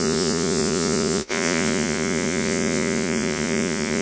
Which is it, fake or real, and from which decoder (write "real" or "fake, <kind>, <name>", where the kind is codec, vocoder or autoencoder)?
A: fake, vocoder, Vocos